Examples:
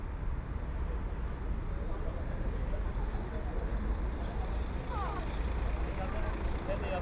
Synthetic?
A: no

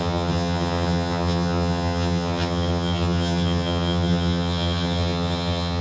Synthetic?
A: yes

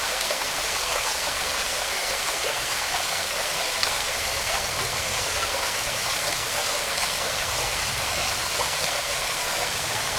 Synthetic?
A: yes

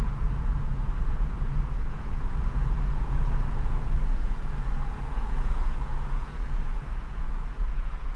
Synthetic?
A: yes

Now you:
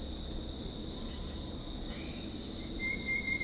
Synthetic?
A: no